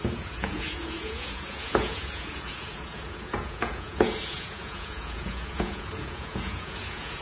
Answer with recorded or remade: remade